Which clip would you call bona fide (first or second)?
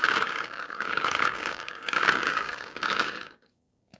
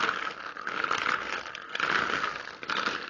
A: second